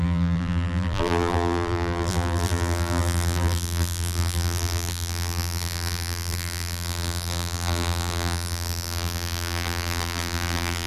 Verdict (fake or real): fake